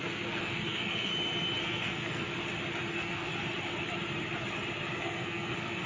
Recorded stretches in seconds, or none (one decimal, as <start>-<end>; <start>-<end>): 1.1-1.6; 2.3-2.9; 3.3-5.0